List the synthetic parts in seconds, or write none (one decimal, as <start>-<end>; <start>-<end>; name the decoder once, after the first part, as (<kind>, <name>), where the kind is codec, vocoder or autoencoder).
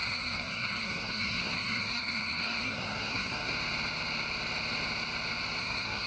0.0-3.5 (codec, SNAC); 5.6-6.1